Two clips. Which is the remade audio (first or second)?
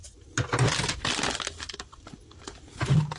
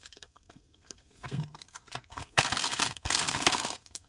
second